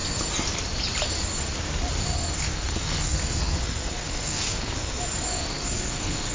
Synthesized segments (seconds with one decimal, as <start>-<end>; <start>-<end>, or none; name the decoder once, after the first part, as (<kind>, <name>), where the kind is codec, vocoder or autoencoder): 2.4-5.0 (codec, SNAC); 5.5-6.3